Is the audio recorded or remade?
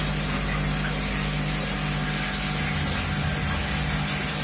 recorded